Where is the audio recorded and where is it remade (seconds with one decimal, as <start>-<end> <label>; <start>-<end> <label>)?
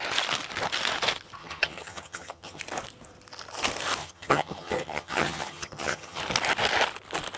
0.0-1.4 recorded; 1.4-2.6 remade; 2.6-4.0 recorded; 4.0-6.2 remade; 6.2-7.4 recorded